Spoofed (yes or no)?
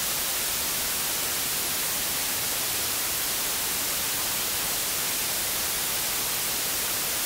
no